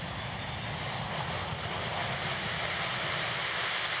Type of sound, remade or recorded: recorded